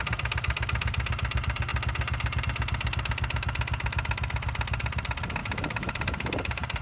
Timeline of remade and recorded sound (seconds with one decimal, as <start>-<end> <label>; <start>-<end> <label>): 0.0-5.4 recorded; 5.4-6.8 remade